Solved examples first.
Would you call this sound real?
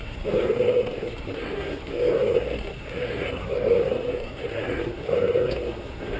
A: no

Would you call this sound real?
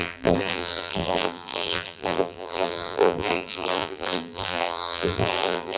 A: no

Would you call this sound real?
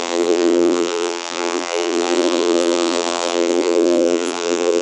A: no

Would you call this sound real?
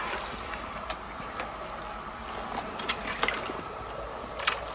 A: yes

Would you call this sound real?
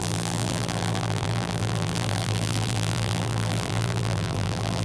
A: no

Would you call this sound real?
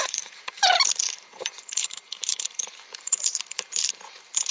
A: no